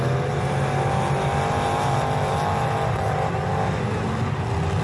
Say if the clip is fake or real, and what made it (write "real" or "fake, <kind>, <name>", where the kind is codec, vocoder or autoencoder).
real